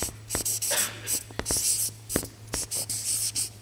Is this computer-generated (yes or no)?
no